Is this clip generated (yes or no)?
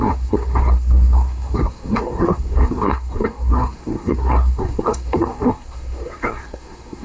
yes